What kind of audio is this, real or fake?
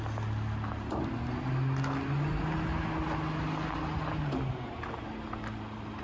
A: real